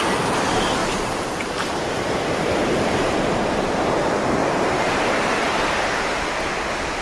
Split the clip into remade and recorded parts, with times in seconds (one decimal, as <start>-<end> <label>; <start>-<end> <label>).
0.0-0.8 recorded; 0.8-3.9 remade; 3.9-4.4 recorded; 4.4-5.7 remade; 5.7-7.0 recorded